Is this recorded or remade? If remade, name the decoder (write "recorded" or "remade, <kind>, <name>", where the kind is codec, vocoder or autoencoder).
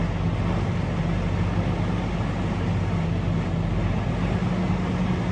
recorded